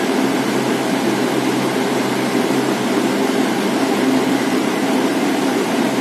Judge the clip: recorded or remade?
remade